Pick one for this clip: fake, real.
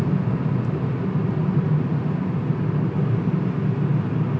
real